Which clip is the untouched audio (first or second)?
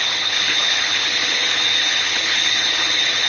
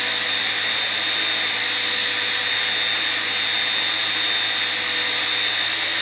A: second